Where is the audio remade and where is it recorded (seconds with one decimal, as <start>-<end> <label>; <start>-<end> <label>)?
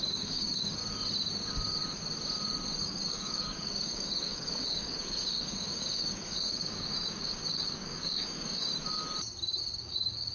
0.0-0.8 remade; 0.8-2.8 recorded; 2.8-8.7 remade; 8.7-9.8 recorded; 9.8-10.3 remade